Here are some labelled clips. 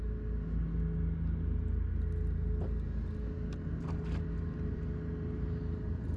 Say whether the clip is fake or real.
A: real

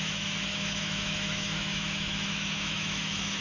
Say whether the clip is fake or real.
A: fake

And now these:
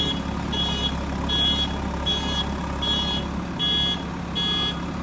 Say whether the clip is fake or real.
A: real